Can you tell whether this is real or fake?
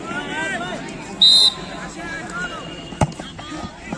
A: real